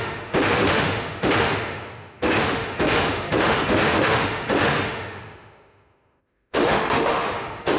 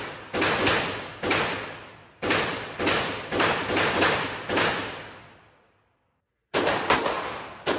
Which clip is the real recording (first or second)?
second